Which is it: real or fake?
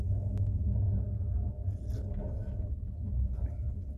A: real